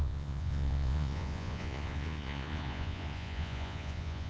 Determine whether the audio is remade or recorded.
remade